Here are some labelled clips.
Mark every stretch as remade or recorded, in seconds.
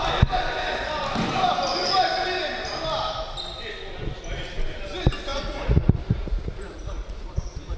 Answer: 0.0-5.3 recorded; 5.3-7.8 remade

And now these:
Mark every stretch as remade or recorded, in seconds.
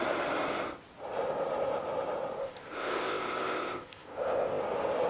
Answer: 0.0-2.4 recorded; 2.4-4.6 remade; 4.6-5.1 recorded